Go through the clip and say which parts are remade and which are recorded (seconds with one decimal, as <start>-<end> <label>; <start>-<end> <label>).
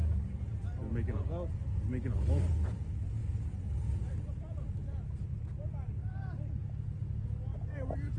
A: 0.0-8.2 recorded